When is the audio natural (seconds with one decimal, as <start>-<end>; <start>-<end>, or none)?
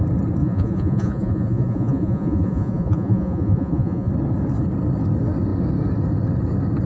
0.0-0.4; 4.1-6.9